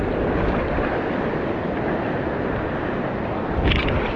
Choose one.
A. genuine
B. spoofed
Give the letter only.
A